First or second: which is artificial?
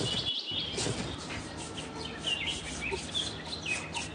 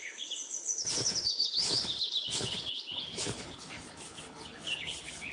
second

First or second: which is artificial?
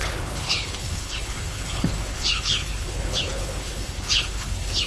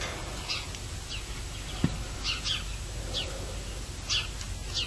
first